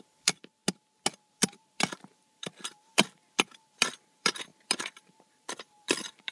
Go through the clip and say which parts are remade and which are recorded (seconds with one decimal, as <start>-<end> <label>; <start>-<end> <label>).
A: 0.0-0.6 remade; 0.6-1.3 recorded; 1.3-6.3 remade